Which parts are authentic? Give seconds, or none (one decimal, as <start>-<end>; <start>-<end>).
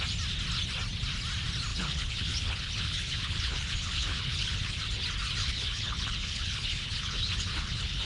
0.0-1.7; 4.8-5.4